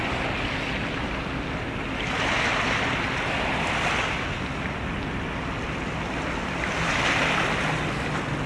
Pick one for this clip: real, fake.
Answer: real